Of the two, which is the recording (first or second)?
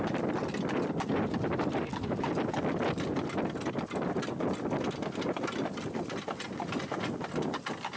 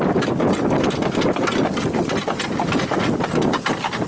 first